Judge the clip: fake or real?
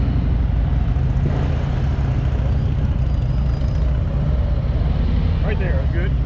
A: real